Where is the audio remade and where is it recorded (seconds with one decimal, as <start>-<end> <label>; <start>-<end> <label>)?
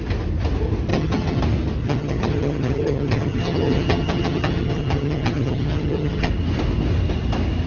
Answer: 0.0-0.9 recorded; 0.9-1.4 remade; 1.4-1.8 recorded; 1.8-6.3 remade; 6.3-7.7 recorded